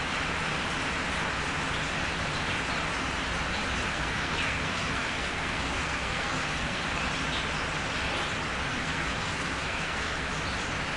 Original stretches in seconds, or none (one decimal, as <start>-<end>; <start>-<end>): 0.0-3.9; 6.8-8.7; 10.3-11.0